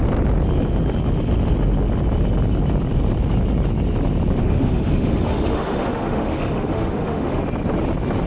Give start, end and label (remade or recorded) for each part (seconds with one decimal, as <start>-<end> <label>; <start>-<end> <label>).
0.0-4.4 recorded; 4.4-7.4 remade; 7.4-8.3 recorded